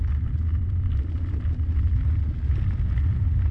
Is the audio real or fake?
real